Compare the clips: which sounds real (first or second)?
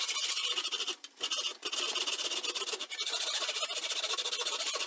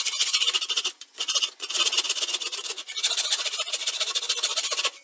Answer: first